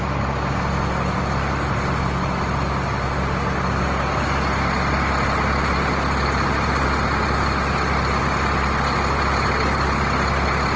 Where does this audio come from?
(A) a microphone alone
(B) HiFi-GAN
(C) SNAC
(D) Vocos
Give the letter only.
A